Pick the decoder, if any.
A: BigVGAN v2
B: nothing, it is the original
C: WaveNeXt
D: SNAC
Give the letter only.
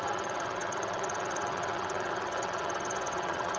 C